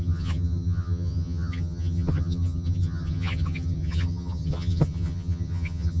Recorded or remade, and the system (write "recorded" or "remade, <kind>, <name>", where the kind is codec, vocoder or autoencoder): remade, vocoder, HiFi-GAN